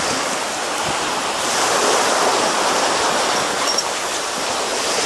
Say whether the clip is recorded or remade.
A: remade